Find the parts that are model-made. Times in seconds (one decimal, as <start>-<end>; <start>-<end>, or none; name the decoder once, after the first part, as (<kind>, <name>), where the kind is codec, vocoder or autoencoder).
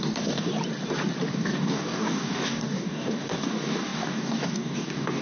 0.0-0.5 (codec, DAC); 1.3-5.2